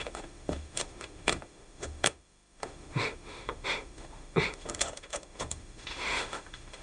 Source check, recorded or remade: remade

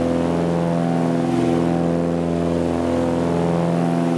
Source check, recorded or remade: recorded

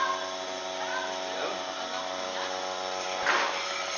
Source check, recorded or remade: recorded